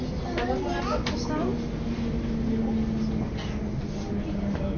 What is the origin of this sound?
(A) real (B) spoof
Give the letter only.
A